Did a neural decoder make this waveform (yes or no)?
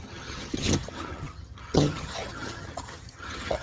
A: yes